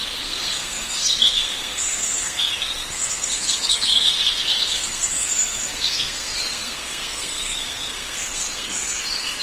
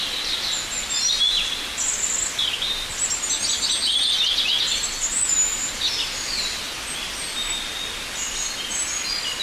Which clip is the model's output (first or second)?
first